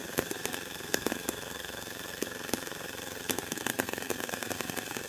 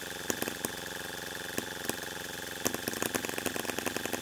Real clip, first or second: second